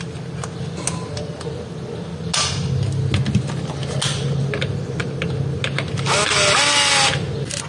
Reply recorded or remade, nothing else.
recorded